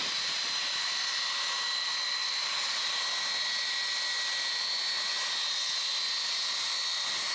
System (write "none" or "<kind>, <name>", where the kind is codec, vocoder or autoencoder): none